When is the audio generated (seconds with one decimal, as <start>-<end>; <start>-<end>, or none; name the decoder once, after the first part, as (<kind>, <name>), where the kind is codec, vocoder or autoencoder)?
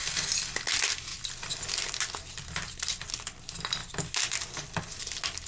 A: none